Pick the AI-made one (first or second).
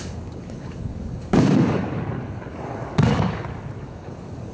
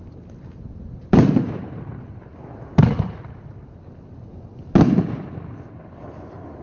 first